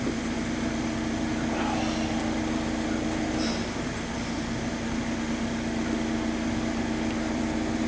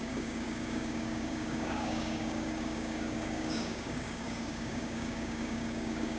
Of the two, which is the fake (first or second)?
second